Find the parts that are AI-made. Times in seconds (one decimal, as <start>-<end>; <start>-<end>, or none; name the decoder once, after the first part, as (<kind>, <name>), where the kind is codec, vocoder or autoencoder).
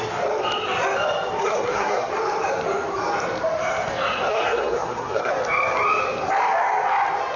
1.4-2.1 (codec, SNAC); 4.3-5.3